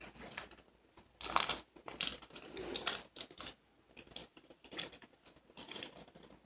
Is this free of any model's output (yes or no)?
yes